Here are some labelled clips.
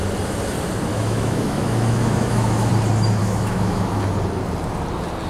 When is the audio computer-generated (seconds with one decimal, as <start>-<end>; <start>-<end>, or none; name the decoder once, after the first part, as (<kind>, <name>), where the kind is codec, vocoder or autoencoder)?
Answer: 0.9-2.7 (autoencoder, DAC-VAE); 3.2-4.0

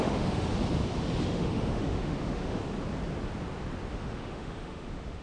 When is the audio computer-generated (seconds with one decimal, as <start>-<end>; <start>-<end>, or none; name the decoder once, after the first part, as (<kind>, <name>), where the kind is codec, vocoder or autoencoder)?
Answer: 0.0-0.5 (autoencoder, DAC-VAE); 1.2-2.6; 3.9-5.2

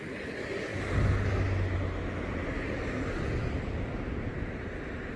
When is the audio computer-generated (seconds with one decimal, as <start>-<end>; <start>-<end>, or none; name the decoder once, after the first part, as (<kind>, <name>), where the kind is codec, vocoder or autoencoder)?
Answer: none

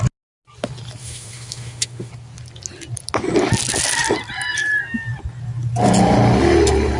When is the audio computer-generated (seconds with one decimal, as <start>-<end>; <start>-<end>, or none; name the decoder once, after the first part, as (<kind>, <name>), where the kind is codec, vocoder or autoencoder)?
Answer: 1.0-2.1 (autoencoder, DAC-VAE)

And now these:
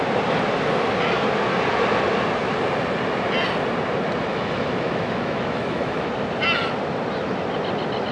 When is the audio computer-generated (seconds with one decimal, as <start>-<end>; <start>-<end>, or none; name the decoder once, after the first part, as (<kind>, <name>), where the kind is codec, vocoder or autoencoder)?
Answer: 4.3-6.1 (autoencoder, DAC-VAE)

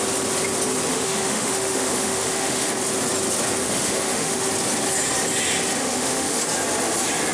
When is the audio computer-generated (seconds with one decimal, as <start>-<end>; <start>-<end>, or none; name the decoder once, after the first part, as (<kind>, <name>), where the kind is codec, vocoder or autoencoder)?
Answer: 0.9-2.7 (autoencoder, DAC-VAE); 3.6-4.4; 5.8-6.4

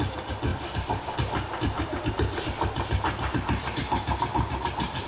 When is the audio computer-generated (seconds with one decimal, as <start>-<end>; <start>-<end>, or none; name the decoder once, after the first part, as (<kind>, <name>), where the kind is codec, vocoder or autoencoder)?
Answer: none